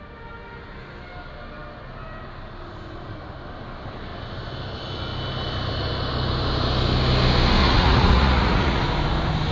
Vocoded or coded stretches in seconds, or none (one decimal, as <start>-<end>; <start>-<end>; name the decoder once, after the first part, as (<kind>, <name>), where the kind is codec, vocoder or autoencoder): 7.6-8.8 (vocoder, Vocos)